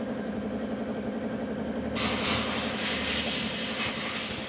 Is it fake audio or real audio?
real